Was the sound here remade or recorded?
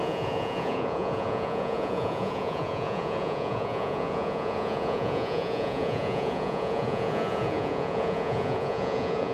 remade